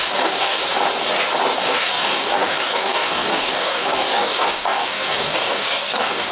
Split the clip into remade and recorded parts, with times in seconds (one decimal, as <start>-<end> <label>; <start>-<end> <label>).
0.0-0.6 remade; 0.6-1.6 recorded; 1.6-6.3 remade